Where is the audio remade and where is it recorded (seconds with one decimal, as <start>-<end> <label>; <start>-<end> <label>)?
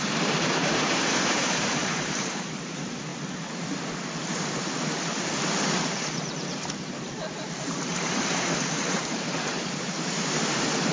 0.0-3.1 remade; 3.1-6.0 recorded; 6.0-10.9 remade